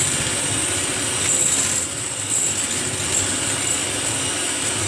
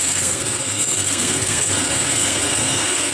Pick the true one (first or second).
first